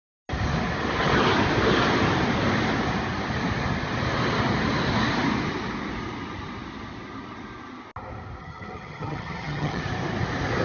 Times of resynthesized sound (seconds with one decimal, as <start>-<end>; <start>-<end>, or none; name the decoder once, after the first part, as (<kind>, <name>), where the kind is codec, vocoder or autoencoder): 8.4-9.8 (vocoder, HiFi-GAN)

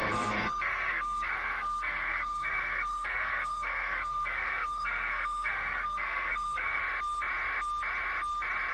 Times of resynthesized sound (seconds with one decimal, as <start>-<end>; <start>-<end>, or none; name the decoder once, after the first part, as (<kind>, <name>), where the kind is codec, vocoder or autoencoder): 0.0-6.8 (codec, SNAC)

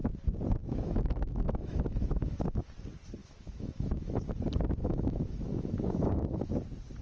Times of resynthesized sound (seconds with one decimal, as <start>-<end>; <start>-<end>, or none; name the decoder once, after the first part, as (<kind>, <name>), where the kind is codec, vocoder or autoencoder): 0.6-2.6 (autoencoder, DAC-VAE); 3.2-4.3; 4.8-6.5

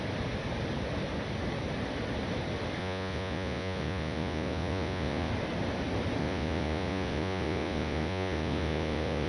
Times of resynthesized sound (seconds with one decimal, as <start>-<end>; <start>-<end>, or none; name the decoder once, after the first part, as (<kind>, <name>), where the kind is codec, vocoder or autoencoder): 2.8-5.3 (vocoder, Vocos); 6.2-9.3

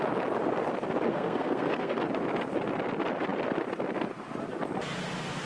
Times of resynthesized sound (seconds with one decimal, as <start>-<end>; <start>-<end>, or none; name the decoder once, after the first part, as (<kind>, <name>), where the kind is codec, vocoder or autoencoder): 1.1-2.0 (codec, SNAC)

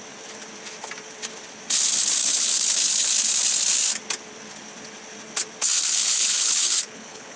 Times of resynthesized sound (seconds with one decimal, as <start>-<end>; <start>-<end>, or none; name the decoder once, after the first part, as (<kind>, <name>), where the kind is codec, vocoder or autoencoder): 2.2-3.1 (codec, HILCodec); 6.0-7.4